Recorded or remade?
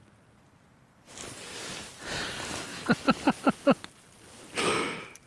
recorded